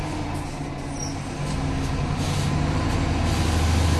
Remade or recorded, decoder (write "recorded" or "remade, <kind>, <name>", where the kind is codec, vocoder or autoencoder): recorded